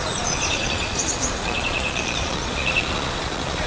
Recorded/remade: remade